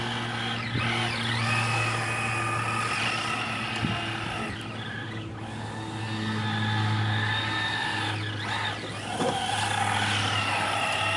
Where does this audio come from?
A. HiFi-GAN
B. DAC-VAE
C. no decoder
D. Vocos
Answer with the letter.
C